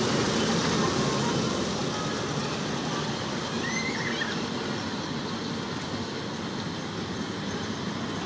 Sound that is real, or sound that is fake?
real